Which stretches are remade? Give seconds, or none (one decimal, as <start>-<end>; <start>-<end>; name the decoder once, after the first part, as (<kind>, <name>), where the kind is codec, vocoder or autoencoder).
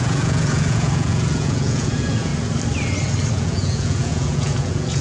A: 0.0-2.3 (vocoder, Vocos); 3.3-5.0